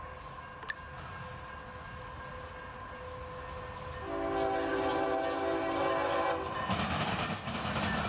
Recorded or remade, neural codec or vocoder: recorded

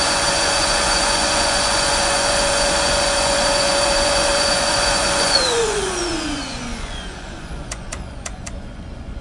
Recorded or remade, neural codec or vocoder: remade, vocoder, Vocos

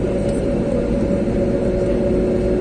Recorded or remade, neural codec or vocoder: recorded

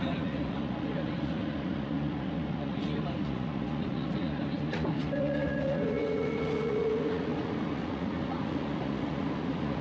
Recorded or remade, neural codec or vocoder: remade, vocoder, Vocos